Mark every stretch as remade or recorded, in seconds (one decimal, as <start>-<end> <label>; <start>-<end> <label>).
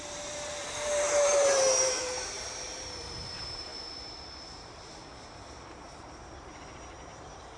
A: 0.0-5.0 remade; 5.0-6.0 recorded; 6.0-7.6 remade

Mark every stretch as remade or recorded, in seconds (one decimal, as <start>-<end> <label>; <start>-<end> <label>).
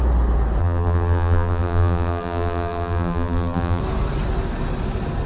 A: 0.0-0.6 recorded; 0.6-3.8 remade; 3.8-5.3 recorded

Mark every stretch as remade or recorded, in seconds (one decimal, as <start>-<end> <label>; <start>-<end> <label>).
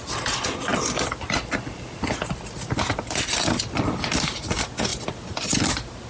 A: 0.0-6.1 recorded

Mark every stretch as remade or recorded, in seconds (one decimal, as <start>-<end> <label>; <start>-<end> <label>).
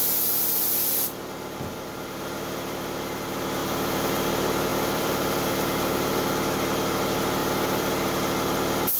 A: 0.0-3.6 recorded; 3.6-4.3 remade; 4.3-4.7 recorded; 4.7-6.3 remade; 6.3-7.4 recorded; 7.4-7.9 remade; 7.9-9.0 recorded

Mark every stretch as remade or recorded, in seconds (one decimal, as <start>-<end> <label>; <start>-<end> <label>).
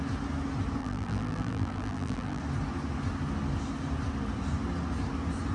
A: 0.0-0.8 recorded; 0.8-2.4 remade; 2.4-5.5 recorded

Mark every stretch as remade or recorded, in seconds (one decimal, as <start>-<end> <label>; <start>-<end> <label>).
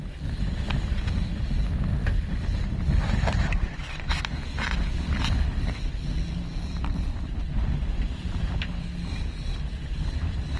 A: 0.0-10.6 recorded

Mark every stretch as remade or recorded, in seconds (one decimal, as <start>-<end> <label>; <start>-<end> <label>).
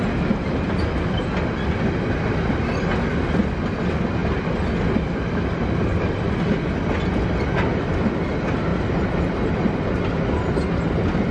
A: 0.0-8.7 recorded; 8.7-10.0 remade; 10.0-11.3 recorded